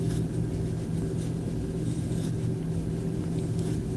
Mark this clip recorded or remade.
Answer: recorded